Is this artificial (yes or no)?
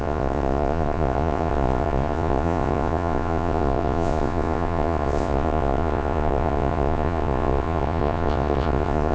yes